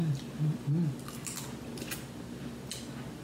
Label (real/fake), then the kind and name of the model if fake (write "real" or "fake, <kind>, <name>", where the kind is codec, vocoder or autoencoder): real